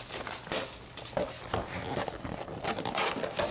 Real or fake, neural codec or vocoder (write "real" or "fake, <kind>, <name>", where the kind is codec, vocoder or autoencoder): real